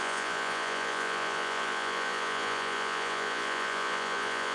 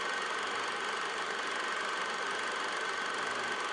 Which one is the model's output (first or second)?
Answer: first